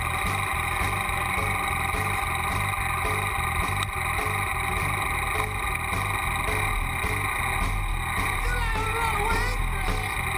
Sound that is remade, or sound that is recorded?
recorded